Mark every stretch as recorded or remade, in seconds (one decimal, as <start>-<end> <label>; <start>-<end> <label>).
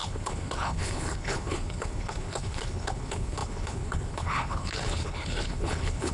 0.0-6.1 remade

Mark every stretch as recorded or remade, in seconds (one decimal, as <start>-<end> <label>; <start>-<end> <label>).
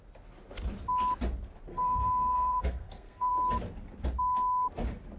0.0-1.7 recorded; 1.7-3.3 remade; 3.3-5.2 recorded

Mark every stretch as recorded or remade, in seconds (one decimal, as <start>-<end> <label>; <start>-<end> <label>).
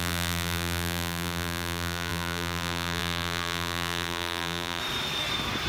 0.0-4.8 remade; 4.8-5.7 recorded